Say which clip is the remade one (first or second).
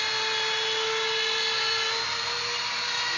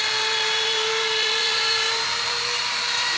second